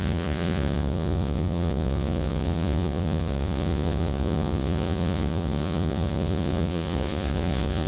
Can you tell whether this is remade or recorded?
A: remade